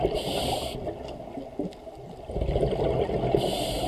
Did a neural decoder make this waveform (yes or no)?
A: no